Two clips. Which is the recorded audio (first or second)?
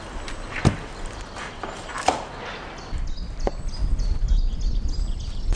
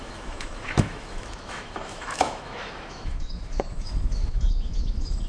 first